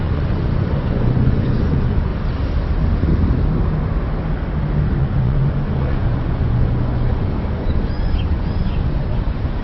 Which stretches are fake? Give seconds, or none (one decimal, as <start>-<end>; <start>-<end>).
0.0-2.1; 5.0-9.6